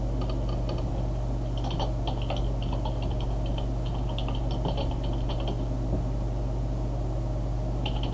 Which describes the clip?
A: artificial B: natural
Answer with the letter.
B